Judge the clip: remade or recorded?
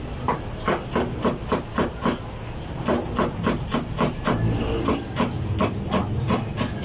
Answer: recorded